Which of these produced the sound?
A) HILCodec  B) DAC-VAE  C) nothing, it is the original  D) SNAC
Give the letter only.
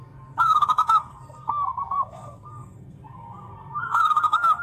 D